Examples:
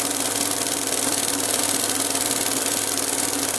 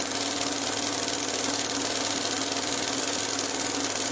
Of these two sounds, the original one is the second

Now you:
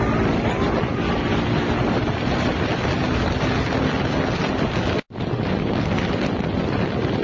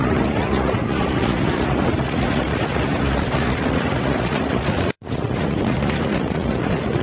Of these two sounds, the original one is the first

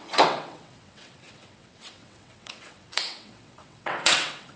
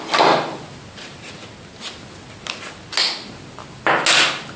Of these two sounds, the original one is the second